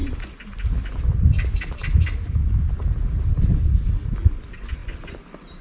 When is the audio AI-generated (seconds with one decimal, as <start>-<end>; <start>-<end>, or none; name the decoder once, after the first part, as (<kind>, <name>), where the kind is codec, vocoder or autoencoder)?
none